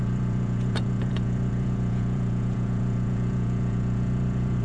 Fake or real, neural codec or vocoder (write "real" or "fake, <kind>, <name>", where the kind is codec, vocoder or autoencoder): fake, vocoder, Vocos